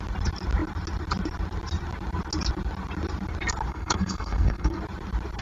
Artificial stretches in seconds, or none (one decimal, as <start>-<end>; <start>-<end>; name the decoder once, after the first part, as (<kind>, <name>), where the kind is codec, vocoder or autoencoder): 3.7-4.8 (codec, SNAC)